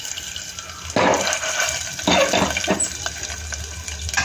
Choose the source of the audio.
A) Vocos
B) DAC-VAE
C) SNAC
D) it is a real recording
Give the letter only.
D